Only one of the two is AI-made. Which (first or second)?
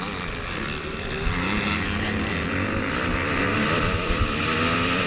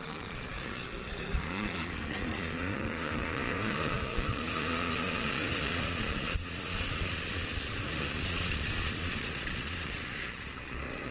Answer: second